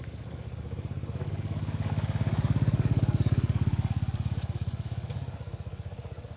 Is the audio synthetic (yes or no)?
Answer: yes